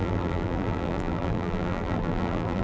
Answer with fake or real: fake